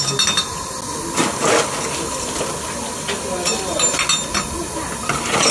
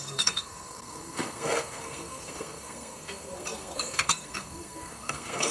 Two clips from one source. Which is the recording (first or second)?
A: first